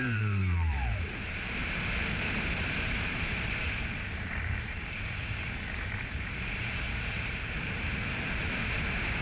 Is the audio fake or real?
fake